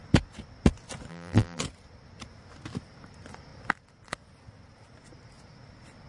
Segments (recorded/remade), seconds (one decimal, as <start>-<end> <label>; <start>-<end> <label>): 0.0-1.1 recorded; 1.1-1.6 remade; 1.6-6.1 recorded